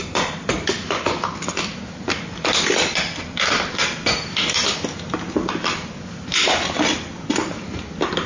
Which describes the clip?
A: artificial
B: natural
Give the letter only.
B